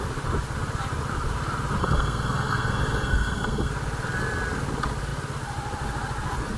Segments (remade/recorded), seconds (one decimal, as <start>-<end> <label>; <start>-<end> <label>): 0.0-1.8 recorded; 1.8-3.7 remade; 3.7-6.6 recorded